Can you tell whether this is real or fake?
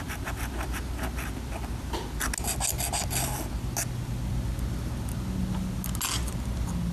real